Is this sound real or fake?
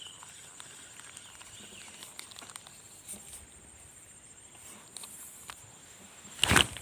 real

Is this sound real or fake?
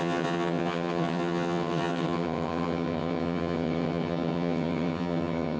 fake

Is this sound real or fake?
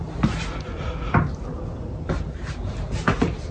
real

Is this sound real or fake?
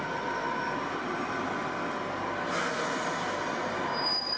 real